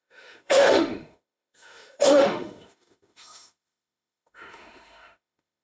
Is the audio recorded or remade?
remade